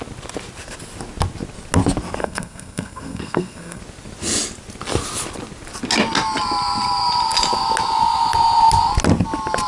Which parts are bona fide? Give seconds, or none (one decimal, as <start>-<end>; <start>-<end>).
0.0-2.2; 3.8-9.7